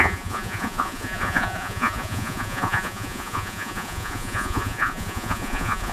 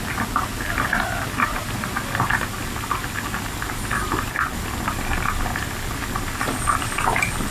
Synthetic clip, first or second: first